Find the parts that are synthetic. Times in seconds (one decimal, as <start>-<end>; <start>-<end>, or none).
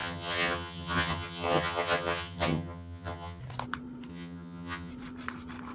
0.0-3.4; 4.1-4.9